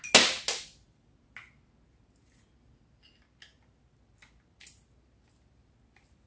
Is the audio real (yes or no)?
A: yes